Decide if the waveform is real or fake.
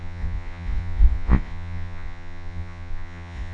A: fake